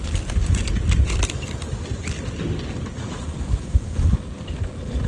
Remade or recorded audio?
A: recorded